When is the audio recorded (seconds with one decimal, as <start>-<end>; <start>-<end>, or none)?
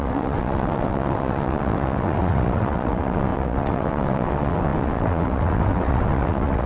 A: none